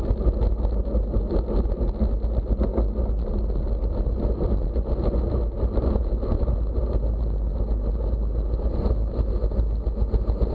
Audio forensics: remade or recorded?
recorded